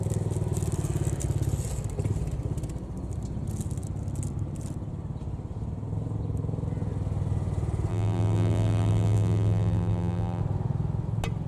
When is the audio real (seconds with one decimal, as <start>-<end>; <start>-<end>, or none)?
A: 0.0-7.9; 10.4-11.5